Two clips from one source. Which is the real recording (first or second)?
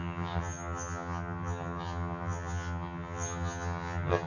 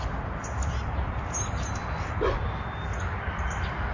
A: second